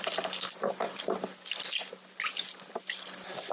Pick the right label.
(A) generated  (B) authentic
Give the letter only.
B